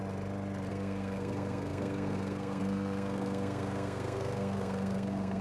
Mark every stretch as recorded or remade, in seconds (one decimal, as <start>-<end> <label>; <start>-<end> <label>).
0.0-0.7 recorded; 0.7-5.4 remade